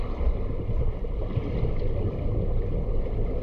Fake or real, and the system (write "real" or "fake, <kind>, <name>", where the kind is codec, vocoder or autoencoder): real